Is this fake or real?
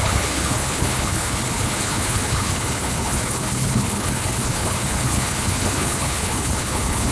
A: fake